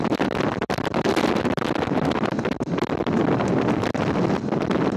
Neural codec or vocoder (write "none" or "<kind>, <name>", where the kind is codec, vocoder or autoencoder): none